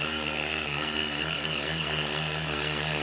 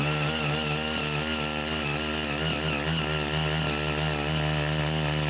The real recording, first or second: second